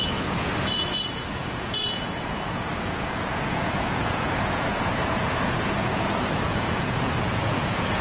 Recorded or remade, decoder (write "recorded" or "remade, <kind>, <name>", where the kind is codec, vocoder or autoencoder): remade, vocoder, Vocos